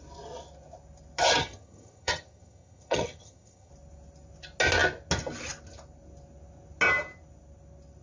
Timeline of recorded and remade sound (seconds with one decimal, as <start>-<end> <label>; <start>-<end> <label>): 0.0-1.4 recorded; 1.4-3.7 remade; 3.7-8.0 recorded